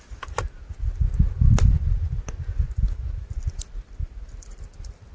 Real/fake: real